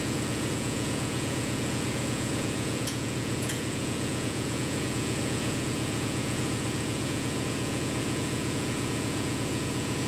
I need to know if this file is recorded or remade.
remade